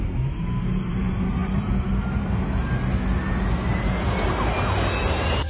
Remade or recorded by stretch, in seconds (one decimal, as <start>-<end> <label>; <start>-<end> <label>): 0.0-5.5 recorded